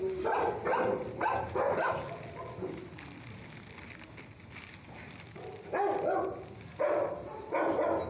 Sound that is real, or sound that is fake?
real